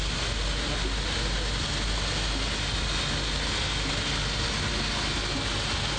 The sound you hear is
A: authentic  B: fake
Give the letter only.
A